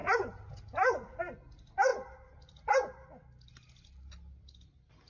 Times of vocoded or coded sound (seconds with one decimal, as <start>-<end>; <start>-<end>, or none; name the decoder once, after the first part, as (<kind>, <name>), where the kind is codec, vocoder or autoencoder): 0.0-0.6 (vocoder, BigVGAN v2)